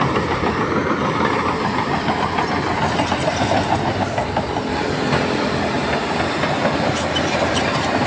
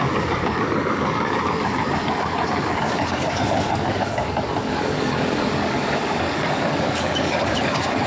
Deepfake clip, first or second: second